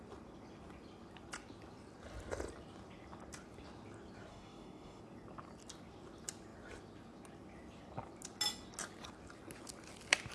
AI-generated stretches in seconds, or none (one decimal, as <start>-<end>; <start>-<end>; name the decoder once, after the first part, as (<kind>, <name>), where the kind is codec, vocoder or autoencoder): 4.3-5.0 (codec, DAC)

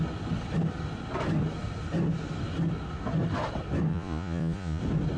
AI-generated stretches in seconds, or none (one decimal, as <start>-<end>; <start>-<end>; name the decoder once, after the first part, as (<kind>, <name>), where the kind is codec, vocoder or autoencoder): 3.9-4.8 (vocoder, Vocos)